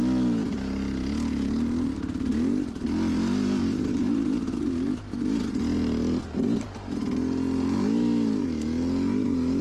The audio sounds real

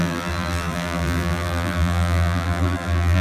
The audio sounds fake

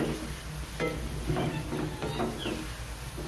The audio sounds real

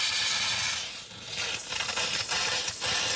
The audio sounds real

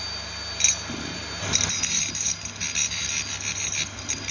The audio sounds real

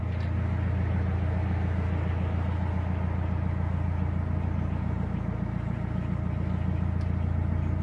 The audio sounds real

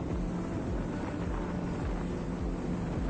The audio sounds real